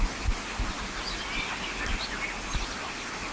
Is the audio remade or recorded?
recorded